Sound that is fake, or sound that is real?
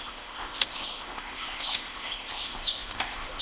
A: fake